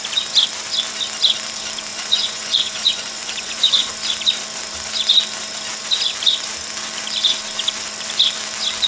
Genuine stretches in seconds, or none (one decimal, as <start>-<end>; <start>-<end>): 0.0-1.9; 3.9-8.9

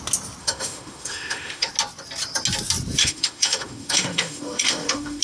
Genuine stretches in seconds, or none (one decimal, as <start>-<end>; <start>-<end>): 0.0-0.4; 1.7-3.0

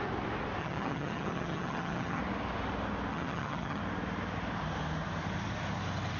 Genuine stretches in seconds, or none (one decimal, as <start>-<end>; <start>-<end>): 0.0-0.6; 2.2-3.1; 3.8-6.2

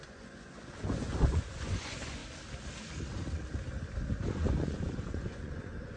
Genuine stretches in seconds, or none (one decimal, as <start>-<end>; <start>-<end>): 2.2-4.3

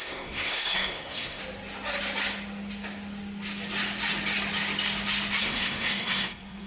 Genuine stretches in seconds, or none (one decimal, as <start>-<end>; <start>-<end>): 1.4-5.4